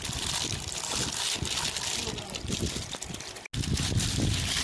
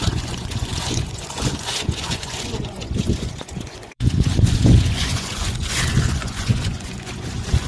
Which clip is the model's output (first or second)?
second